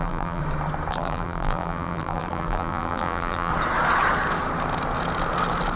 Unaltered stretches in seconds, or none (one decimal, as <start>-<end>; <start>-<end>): 0.4-0.9; 3.5-5.8